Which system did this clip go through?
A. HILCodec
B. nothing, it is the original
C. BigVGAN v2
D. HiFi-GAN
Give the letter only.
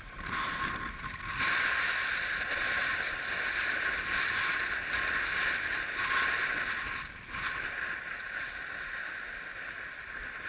B